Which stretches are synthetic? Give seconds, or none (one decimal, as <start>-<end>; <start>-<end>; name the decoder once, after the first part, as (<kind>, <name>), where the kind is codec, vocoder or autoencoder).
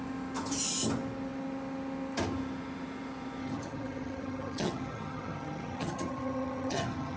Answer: 3.4-7.2 (vocoder, HiFi-GAN)